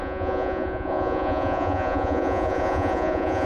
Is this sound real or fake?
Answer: fake